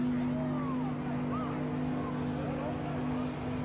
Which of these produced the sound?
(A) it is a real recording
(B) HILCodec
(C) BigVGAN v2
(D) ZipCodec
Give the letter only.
A